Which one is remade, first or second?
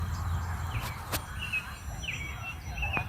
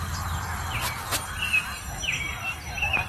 second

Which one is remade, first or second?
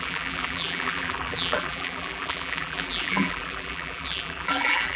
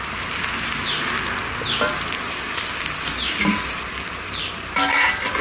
first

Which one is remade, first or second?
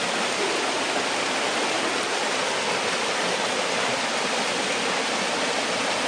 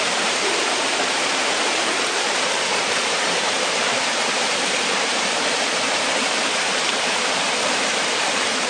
second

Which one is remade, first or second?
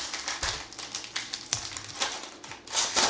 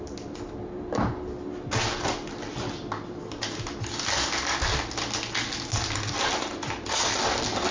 first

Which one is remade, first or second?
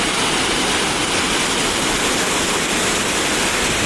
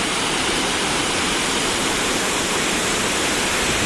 second